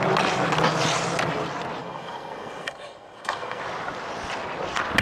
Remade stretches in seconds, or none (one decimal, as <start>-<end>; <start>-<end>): 1.8-3.6